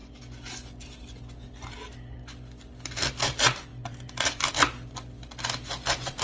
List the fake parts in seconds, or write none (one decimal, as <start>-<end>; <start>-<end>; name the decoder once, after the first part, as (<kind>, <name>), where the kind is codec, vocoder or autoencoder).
none